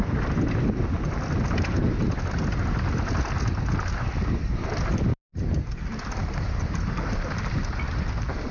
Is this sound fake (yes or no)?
no